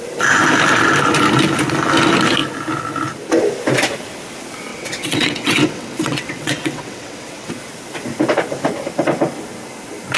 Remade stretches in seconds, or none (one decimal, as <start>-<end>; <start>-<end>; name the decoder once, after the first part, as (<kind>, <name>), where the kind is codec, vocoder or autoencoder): 4.7-7.5 (vocoder, WaveNeXt)